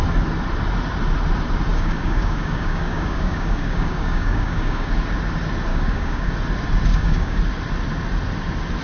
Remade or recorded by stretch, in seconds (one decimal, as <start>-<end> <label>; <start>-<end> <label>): 0.0-1.7 recorded; 1.7-4.9 remade; 4.9-5.7 recorded; 5.7-6.3 remade; 6.3-6.9 recorded; 6.9-7.4 remade; 7.4-8.8 recorded